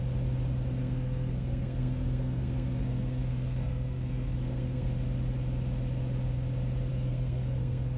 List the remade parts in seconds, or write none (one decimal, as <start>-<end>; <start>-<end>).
0.8-4.9; 6.9-8.0